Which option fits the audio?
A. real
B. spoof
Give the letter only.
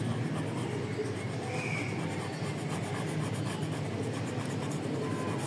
A